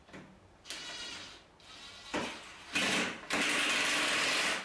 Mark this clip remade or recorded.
recorded